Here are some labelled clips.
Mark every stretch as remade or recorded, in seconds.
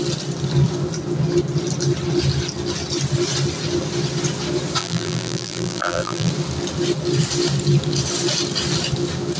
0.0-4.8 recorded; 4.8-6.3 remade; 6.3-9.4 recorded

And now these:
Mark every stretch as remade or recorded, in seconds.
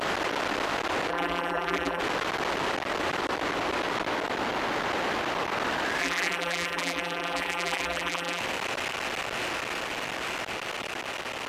0.0-1.1 recorded; 1.1-2.0 remade; 2.0-6.0 recorded; 6.0-8.4 remade; 8.4-11.5 recorded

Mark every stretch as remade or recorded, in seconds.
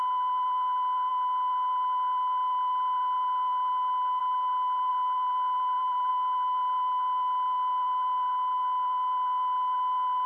0.0-4.9 recorded; 4.9-6.1 remade; 6.1-10.3 recorded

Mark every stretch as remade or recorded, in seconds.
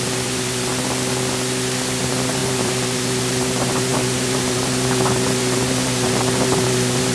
0.0-0.7 remade; 0.7-2.0 recorded; 2.0-7.1 remade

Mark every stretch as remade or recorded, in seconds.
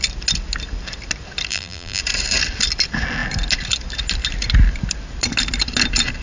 0.0-1.5 recorded; 1.5-2.0 remade; 2.0-6.2 recorded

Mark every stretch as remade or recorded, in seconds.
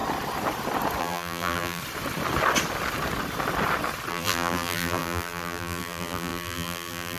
0.0-1.0 recorded; 1.0-1.8 remade; 1.8-4.1 recorded; 4.1-7.2 remade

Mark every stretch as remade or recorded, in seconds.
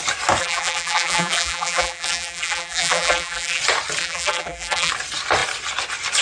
0.0-0.4 recorded; 0.4-3.6 remade; 3.6-4.0 recorded; 4.0-4.9 remade; 4.9-6.2 recorded